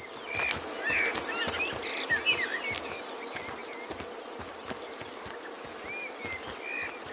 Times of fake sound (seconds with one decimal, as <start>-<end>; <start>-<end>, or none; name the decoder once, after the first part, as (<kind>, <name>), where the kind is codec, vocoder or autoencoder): none